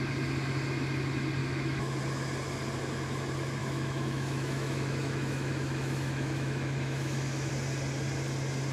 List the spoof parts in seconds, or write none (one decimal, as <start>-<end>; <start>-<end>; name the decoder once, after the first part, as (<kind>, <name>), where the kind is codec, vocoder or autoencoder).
1.4-1.9 (autoencoder, DAC-VAE); 3.6-7.5